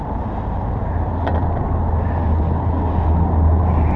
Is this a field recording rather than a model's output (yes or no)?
yes